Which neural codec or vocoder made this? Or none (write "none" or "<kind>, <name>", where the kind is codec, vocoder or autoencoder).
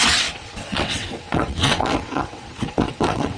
vocoder, WaveNeXt